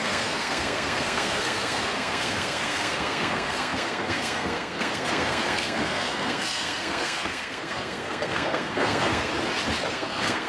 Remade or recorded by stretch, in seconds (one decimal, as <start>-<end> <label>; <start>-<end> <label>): 0.0-9.3 remade; 9.3-9.9 recorded; 9.9-10.5 remade